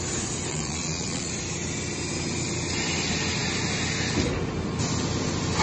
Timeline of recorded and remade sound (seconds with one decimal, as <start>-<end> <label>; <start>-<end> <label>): 0.0-0.5 recorded; 0.5-1.3 remade; 1.3-5.6 recorded